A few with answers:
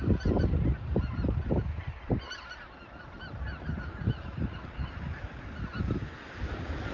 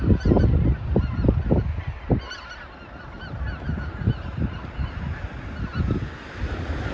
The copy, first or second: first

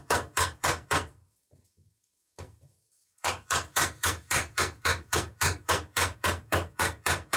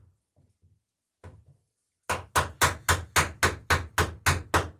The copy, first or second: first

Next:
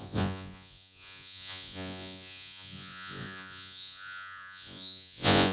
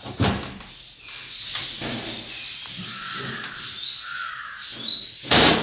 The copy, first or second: first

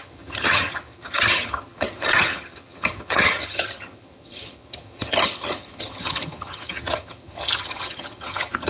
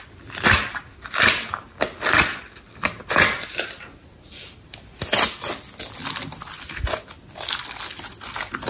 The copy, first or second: first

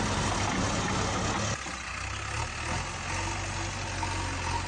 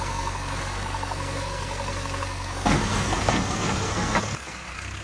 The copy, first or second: second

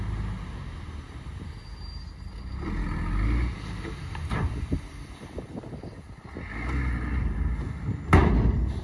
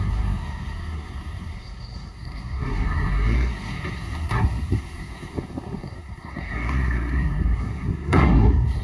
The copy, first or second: second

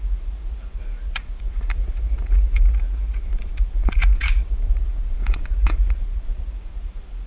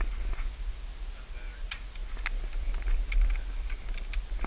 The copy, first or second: first